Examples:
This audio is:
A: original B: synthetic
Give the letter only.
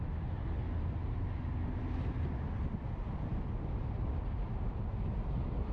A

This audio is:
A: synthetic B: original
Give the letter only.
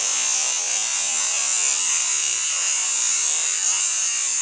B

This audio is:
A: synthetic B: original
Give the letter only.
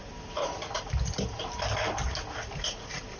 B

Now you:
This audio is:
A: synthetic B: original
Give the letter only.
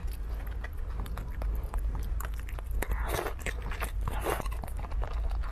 B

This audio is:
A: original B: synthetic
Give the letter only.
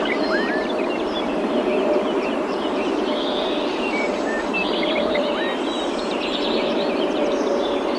B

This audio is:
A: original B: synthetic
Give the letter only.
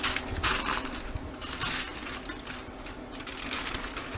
A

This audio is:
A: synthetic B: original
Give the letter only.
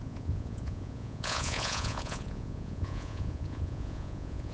A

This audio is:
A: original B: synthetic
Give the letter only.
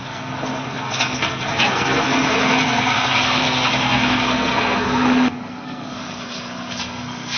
B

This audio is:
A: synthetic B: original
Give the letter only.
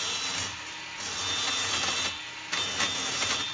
B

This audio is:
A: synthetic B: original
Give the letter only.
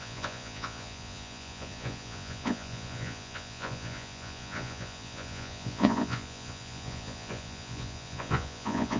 A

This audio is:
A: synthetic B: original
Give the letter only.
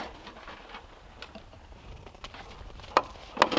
B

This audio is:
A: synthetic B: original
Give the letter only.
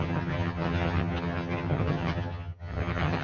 A